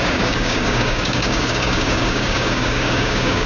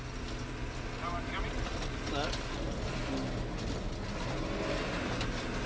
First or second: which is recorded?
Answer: second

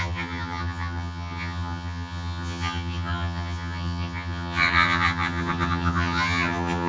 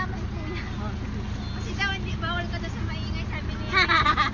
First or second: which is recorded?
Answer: second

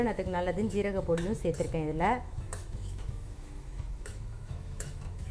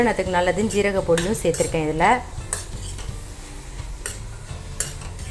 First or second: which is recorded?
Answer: second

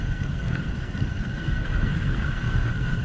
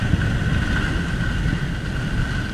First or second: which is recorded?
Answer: second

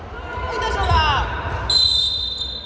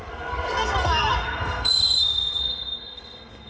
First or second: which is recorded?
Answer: first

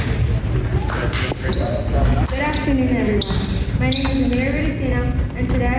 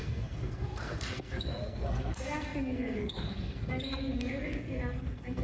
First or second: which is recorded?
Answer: first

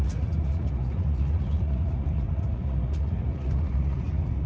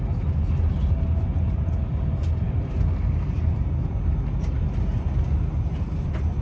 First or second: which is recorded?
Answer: second